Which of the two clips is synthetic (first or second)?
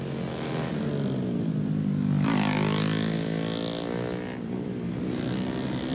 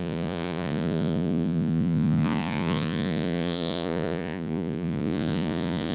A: second